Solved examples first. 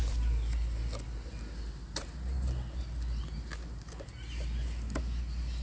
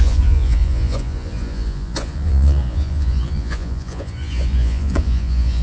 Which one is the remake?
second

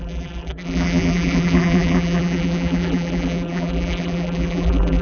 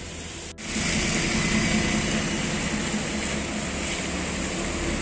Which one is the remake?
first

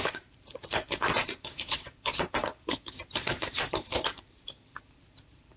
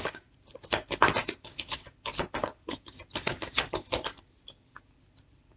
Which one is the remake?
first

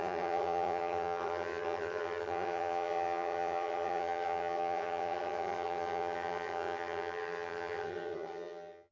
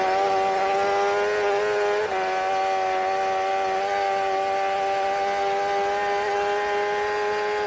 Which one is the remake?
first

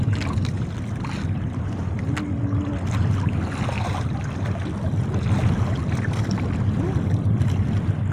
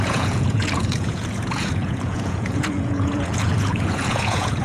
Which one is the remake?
second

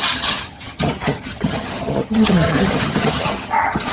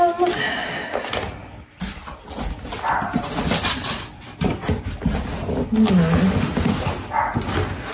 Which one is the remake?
first